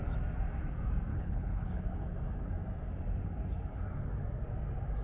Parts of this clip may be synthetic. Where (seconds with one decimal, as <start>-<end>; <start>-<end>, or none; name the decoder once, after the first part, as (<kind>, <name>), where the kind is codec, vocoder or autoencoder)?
1.1-1.8 (codec, HILCodec)